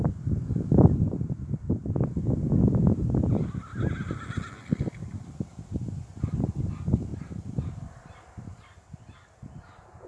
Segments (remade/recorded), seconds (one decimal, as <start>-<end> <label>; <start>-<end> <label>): 0.0-6.1 recorded; 6.1-6.6 remade; 6.6-7.1 recorded; 7.1-10.1 remade